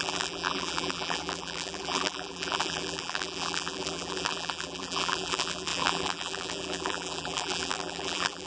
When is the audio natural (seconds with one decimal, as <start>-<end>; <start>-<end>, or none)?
none